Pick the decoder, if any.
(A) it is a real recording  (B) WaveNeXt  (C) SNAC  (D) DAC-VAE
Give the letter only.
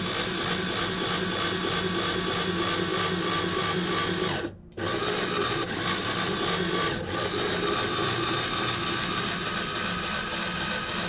A